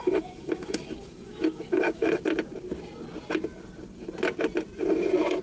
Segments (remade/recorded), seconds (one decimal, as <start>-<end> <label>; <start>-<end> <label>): 0.0-2.2 remade; 2.2-5.4 recorded